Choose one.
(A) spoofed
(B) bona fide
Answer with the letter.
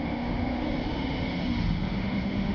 A